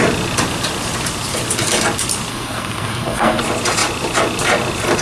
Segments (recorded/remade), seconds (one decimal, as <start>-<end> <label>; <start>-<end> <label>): 0.0-2.3 recorded; 2.3-3.4 remade; 3.4-5.0 recorded